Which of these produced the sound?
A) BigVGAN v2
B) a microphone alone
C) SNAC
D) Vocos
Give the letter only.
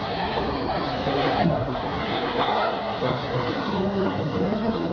C